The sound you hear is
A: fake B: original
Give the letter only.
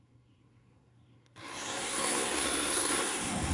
A